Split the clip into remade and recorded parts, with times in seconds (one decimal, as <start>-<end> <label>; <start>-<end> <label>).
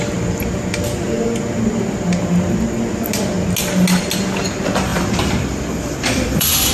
0.0-4.9 recorded; 4.9-6.7 remade